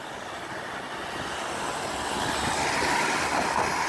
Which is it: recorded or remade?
recorded